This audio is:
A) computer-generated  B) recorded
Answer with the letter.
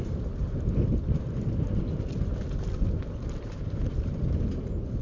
B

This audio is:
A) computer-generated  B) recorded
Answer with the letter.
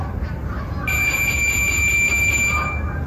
B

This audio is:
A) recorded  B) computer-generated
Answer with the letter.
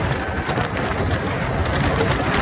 A